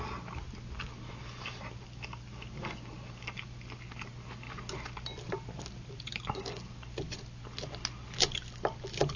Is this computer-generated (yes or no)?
no